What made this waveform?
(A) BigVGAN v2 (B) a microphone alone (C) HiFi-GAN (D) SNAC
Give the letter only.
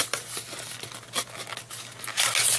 B